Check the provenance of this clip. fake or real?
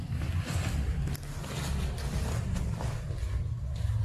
real